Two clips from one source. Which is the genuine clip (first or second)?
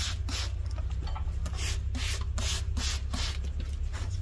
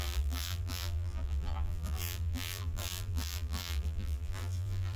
first